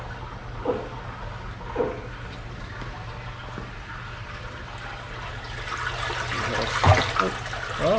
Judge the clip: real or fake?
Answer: real